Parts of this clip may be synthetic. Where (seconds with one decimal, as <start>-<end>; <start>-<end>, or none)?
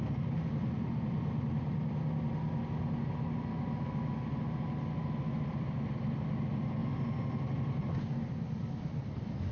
none